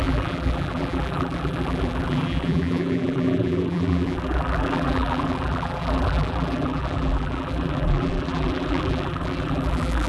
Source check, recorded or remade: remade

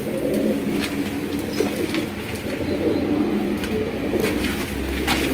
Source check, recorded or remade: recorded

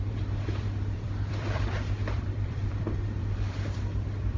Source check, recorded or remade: remade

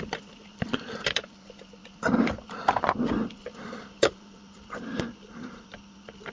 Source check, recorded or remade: remade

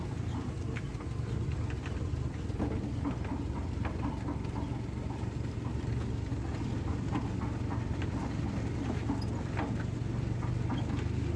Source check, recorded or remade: recorded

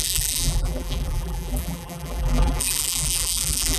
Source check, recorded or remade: remade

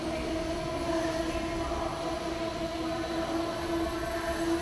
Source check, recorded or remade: recorded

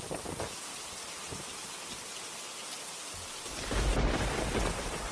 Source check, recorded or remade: remade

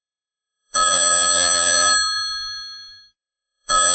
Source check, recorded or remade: remade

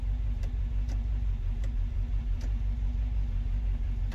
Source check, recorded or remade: remade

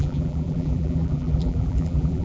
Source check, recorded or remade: remade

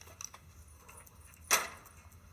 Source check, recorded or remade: recorded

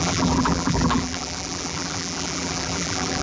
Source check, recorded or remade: remade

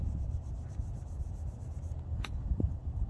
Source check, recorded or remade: remade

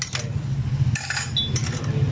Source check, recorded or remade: recorded